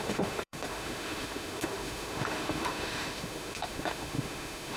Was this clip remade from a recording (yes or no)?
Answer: yes